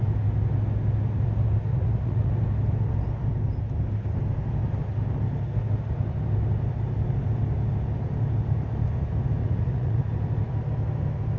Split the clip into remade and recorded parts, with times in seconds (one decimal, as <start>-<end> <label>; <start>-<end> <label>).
0.0-1.7 recorded; 1.7-2.3 remade; 2.3-9.4 recorded; 9.4-10.0 remade; 10.0-11.4 recorded